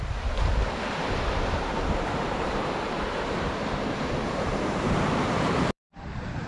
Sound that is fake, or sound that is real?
fake